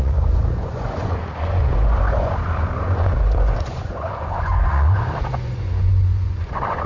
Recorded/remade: remade